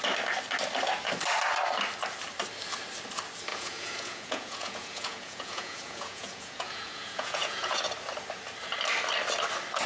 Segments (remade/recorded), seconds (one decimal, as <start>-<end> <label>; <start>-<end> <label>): 0.0-3.5 recorded; 3.5-7.8 remade; 7.8-9.9 recorded